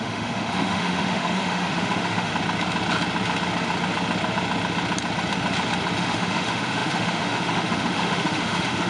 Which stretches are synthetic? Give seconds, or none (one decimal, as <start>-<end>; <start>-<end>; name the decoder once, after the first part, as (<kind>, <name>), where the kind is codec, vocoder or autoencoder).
0.0-2.3 (autoencoder, DAC-VAE); 6.0-8.9